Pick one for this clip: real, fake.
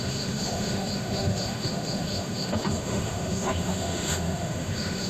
fake